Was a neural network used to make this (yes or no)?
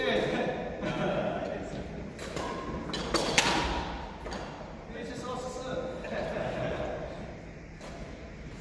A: no